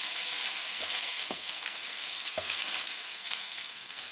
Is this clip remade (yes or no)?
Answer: yes